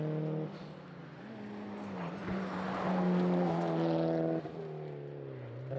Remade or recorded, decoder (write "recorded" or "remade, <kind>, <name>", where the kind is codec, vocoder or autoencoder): recorded